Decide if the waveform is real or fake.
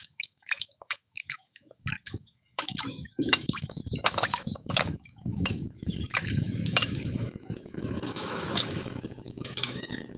fake